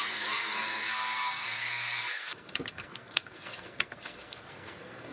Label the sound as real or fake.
fake